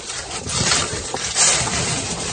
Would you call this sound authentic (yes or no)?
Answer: yes